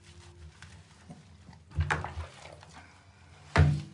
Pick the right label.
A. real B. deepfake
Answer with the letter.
A